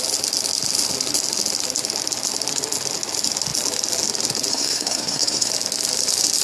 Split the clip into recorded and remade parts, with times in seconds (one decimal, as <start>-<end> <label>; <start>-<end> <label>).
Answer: 0.0-4.5 recorded; 4.5-5.5 remade; 5.5-6.4 recorded